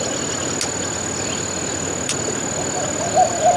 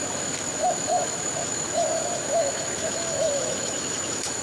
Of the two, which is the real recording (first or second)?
first